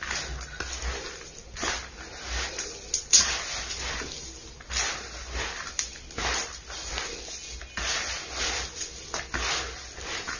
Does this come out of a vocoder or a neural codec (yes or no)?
no